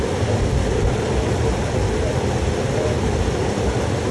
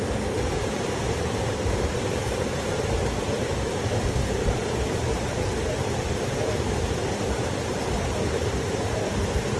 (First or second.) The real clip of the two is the first